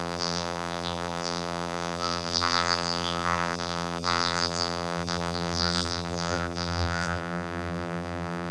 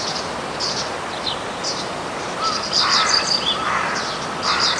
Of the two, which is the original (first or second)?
second